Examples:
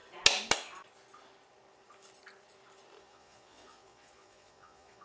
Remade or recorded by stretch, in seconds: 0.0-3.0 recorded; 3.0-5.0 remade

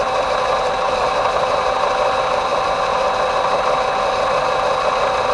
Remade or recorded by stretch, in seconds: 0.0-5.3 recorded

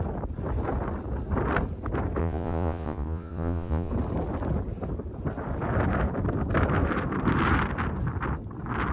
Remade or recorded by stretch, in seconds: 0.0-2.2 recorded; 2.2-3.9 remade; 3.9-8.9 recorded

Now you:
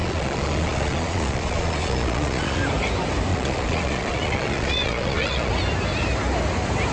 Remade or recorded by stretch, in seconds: 0.0-2.6 remade; 2.6-3.3 recorded; 3.3-5.5 remade; 5.5-6.9 recorded

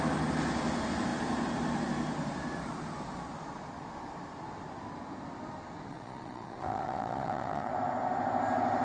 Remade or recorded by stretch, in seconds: 0.0-5.9 recorded; 5.9-7.7 remade; 7.7-8.8 recorded